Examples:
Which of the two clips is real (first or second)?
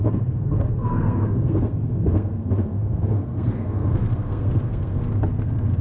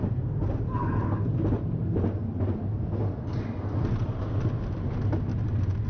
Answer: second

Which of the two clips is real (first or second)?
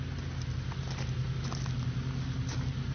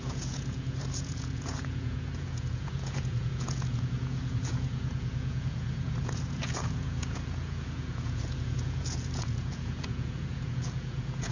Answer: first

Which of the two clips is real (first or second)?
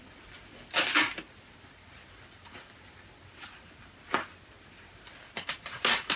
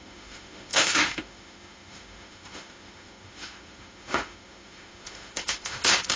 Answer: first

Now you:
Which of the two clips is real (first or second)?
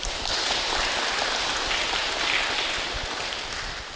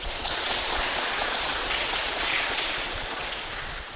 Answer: first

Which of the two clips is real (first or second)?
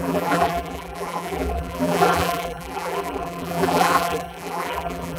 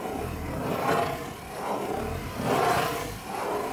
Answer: second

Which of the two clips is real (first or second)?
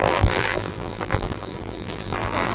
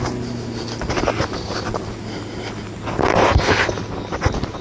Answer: second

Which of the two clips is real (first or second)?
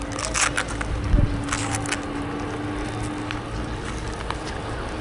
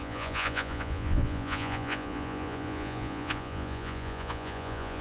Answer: first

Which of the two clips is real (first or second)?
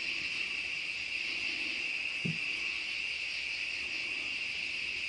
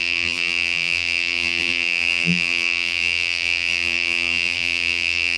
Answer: first